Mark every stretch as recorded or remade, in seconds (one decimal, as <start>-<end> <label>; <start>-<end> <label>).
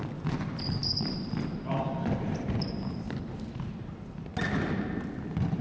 0.0-5.6 recorded